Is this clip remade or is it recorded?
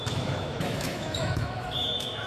remade